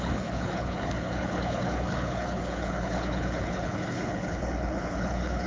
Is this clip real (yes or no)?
no